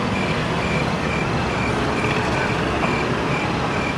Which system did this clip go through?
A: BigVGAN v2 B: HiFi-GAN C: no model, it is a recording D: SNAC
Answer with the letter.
C